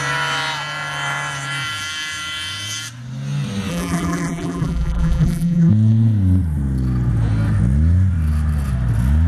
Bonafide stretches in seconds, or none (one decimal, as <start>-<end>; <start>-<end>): 0.0-3.7; 5.7-9.3